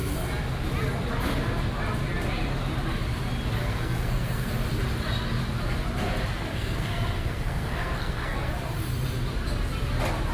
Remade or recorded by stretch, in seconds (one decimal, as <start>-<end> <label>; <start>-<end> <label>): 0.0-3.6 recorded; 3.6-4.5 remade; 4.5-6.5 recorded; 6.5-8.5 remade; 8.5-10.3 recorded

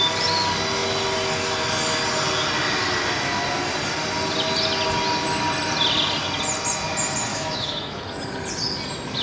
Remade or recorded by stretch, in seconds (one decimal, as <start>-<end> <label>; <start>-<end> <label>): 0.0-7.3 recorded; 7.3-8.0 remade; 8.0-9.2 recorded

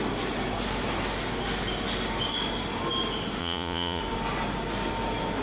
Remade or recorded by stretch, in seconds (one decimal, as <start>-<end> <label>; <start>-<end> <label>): 0.0-3.4 recorded; 3.4-4.0 remade; 4.0-5.4 recorded

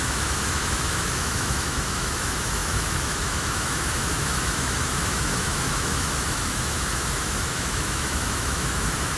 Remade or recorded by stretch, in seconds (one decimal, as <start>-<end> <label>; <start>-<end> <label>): 0.0-9.2 remade

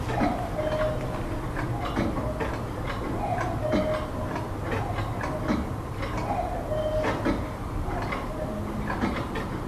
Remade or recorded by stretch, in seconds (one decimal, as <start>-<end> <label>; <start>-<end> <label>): 0.0-9.7 recorded

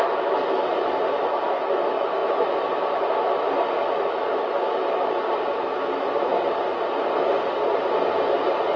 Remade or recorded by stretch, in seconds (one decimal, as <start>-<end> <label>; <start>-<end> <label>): 0.0-6.3 remade; 6.3-8.8 recorded

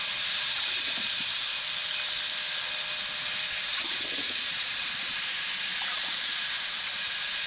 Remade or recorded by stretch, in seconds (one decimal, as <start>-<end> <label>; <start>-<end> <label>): 0.0-1.5 remade; 1.5-3.4 recorded; 3.4-7.5 remade